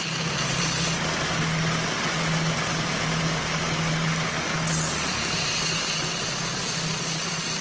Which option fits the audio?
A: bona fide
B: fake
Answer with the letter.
A